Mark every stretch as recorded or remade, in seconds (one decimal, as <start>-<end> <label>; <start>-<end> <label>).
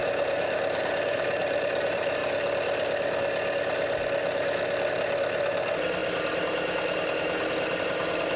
0.0-2.2 remade; 2.2-4.9 recorded; 4.9-6.0 remade; 6.0-7.8 recorded; 7.8-8.4 remade